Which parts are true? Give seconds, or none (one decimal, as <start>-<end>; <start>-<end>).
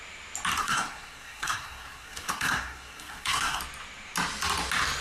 0.0-0.6; 3.6-5.0